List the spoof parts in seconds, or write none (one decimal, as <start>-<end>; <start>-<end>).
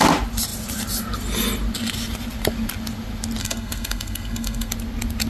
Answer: 3.4-4.7